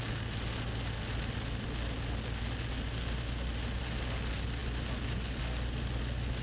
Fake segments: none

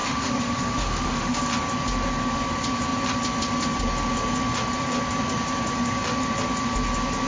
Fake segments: 0.0-1.4 (autoencoder, DAC-VAE)